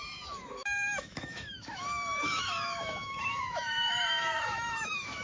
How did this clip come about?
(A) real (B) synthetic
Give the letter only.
B